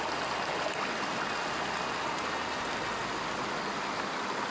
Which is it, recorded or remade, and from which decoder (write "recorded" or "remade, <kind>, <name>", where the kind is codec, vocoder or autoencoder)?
recorded